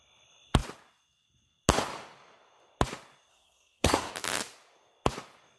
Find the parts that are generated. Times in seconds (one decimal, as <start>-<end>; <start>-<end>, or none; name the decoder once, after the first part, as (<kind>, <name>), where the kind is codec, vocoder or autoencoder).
3.3-4.1 (codec, SNAC)